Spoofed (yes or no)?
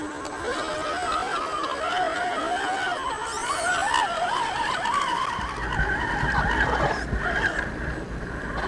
no